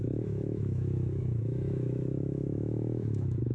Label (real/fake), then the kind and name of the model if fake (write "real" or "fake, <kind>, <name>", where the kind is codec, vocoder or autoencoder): fake, autoencoder, DAC-VAE